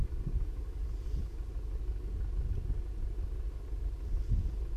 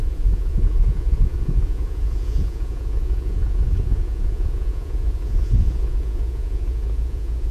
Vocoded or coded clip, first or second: second